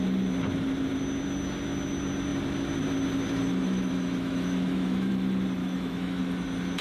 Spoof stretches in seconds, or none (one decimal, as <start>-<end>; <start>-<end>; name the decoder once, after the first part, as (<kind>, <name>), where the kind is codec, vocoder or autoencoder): 3.5-5.1 (autoencoder, DAC-VAE); 5.6-6.2